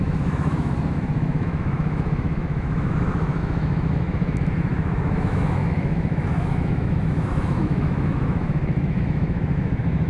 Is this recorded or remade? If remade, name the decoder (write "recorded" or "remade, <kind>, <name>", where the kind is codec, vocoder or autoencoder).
remade, autoencoder, DAC-VAE